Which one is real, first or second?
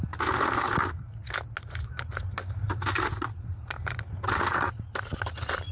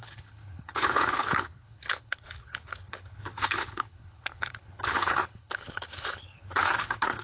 first